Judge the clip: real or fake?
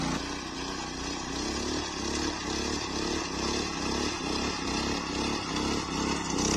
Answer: real